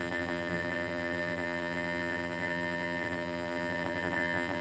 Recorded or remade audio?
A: remade